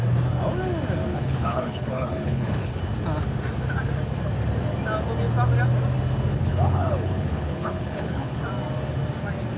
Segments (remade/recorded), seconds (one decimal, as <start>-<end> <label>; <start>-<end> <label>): 0.0-1.1 recorded; 1.1-2.8 remade; 2.8-6.3 recorded; 6.3-8.4 remade; 8.4-9.6 recorded

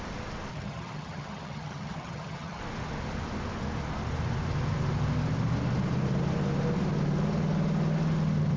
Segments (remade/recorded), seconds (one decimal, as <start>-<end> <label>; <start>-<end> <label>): 0.0-0.5 recorded; 0.5-2.6 remade; 2.6-8.6 recorded

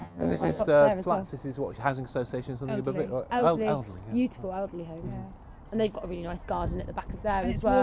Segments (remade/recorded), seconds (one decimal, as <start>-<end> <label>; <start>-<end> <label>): 0.0-0.6 remade; 0.6-7.8 recorded

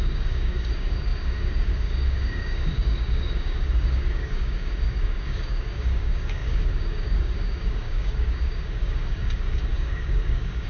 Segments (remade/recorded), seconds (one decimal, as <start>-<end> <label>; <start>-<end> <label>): 0.0-10.7 remade

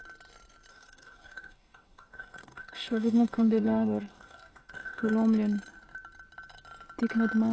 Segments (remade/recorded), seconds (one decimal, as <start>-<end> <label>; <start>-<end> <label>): 0.0-0.7 recorded; 0.7-5.1 remade; 5.1-7.5 recorded

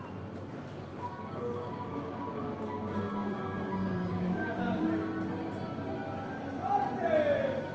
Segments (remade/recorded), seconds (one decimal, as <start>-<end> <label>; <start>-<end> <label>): 0.0-0.9 recorded; 0.9-4.8 remade; 4.8-7.7 recorded

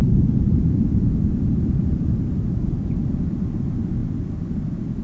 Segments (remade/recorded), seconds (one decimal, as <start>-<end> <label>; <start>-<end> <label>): 0.0-4.0 remade; 4.0-5.0 recorded

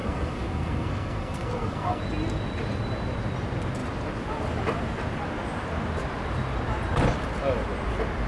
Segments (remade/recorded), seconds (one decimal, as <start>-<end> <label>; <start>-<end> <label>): 0.0-2.0 remade; 2.0-8.3 recorded